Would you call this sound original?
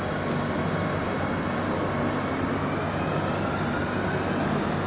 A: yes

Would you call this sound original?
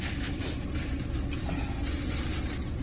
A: yes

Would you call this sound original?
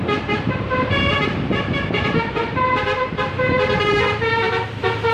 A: no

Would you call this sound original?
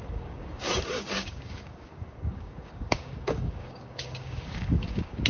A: no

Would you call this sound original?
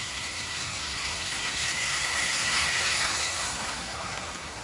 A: no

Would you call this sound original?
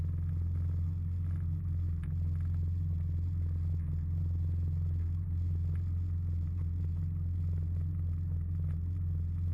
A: yes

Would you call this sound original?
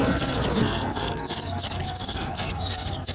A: no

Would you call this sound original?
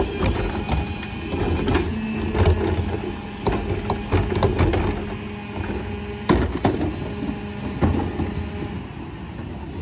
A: yes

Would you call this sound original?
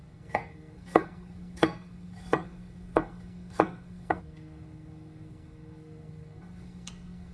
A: no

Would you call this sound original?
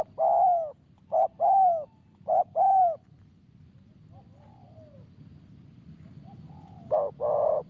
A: yes